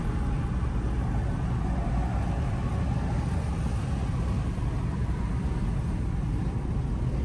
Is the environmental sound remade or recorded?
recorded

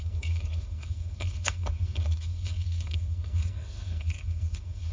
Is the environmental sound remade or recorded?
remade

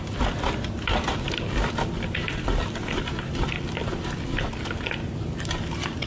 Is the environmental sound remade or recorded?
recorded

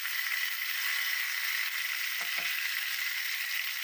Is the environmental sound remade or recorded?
recorded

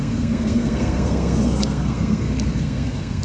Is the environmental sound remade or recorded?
remade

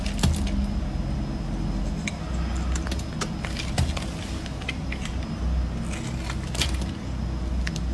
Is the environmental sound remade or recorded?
recorded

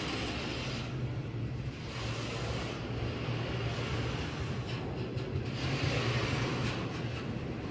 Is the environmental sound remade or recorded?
recorded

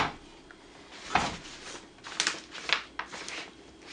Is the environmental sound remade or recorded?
recorded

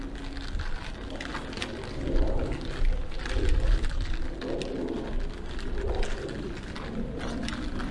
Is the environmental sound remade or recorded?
recorded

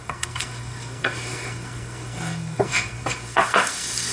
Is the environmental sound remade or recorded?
remade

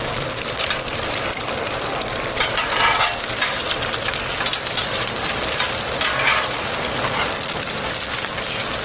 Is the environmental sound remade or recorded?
recorded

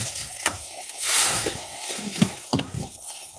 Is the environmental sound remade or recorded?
remade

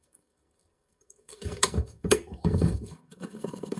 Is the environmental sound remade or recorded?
remade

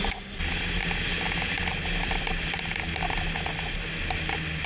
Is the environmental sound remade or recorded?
recorded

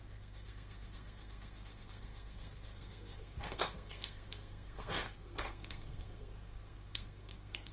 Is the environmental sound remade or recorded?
remade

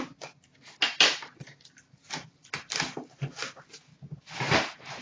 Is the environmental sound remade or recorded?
recorded